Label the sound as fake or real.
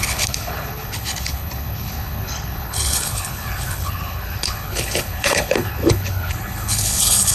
fake